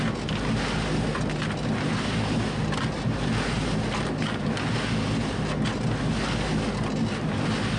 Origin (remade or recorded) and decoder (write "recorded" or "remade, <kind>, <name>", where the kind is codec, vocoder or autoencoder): recorded